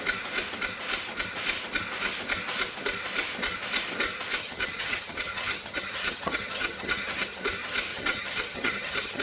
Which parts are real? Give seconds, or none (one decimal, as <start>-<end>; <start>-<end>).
0.0-4.4; 7.4-7.9